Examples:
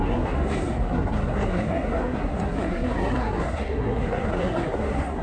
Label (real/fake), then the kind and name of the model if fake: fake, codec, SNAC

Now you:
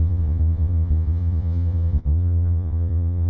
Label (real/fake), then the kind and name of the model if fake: fake, vocoder, Vocos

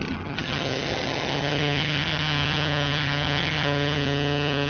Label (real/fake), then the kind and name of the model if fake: fake, vocoder, HiFi-GAN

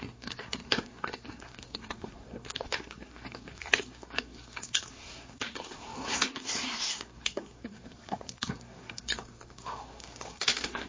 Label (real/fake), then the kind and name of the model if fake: fake, codec, SNAC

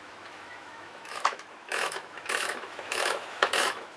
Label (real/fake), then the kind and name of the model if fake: fake, autoencoder, DAC-VAE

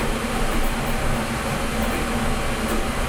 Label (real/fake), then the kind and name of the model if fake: real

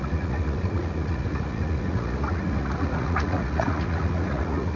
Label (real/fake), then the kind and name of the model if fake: fake, vocoder, Vocos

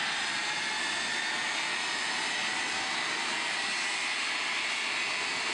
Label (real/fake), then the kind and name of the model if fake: real